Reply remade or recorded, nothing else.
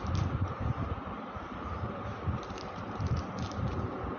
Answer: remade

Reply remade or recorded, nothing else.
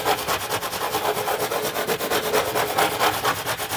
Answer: recorded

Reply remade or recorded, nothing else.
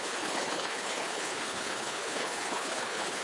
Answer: remade